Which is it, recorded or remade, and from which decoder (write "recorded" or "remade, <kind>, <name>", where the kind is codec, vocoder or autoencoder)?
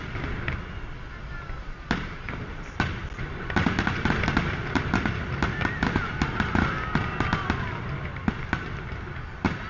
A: recorded